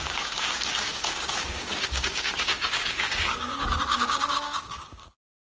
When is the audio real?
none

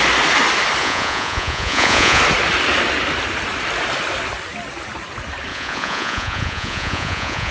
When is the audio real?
0.0-0.8; 2.2-5.5

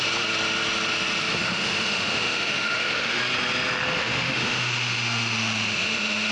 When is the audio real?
0.0-1.3; 3.2-4.0

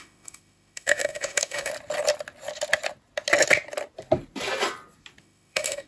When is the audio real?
1.7-5.2

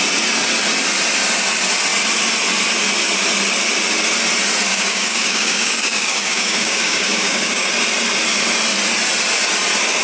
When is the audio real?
0.0-4.7; 7.7-10.0

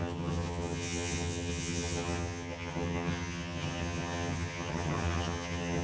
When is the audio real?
none

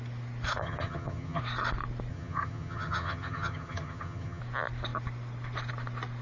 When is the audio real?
0.0-0.6; 1.4-2.1; 4.4-6.2